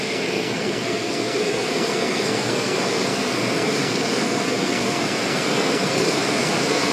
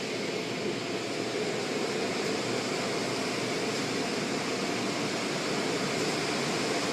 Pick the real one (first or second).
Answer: second